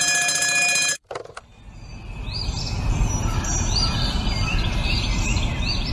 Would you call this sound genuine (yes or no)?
yes